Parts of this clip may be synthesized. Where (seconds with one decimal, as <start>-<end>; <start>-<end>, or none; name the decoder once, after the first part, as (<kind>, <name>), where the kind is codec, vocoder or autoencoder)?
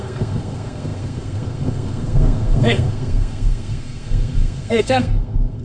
0.0-5.6 (codec, SNAC)